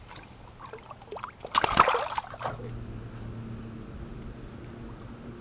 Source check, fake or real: real